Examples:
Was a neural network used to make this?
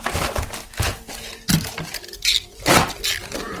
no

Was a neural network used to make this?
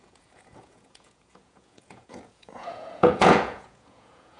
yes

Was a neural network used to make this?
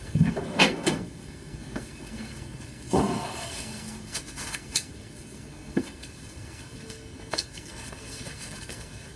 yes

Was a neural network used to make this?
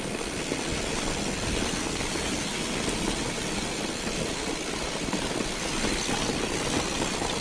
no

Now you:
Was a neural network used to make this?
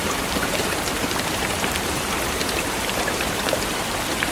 yes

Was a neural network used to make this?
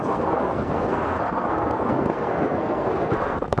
yes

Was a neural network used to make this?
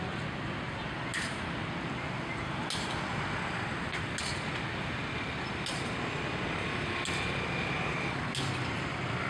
no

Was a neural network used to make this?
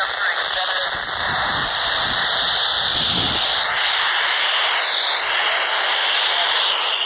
no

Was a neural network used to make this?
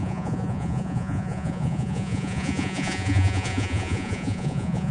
yes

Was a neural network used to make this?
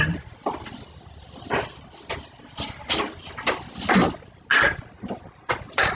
no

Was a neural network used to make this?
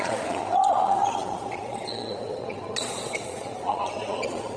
yes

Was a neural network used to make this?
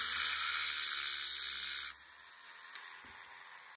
no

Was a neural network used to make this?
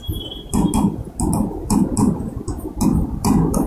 no